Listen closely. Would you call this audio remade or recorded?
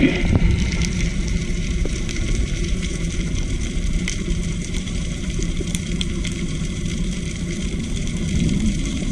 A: remade